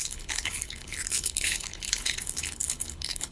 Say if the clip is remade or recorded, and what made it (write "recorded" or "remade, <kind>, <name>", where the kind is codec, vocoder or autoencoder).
remade, codec, HILCodec